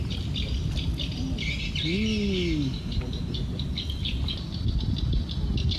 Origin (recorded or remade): recorded